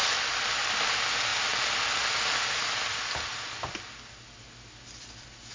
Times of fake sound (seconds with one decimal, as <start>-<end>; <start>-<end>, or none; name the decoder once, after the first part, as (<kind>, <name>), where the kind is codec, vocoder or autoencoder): none